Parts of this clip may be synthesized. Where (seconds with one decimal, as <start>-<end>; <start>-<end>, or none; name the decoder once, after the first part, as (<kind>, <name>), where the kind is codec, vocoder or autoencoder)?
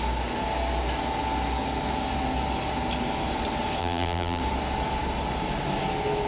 3.8-4.4 (vocoder, BigVGAN v2)